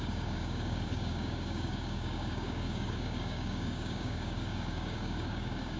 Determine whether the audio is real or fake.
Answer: fake